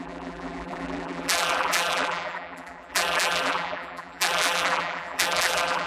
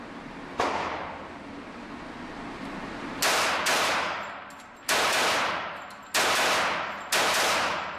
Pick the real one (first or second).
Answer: second